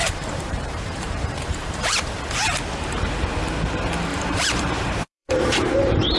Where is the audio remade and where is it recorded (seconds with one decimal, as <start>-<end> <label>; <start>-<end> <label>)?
0.0-2.2 remade; 2.2-4.1 recorded; 4.1-6.2 remade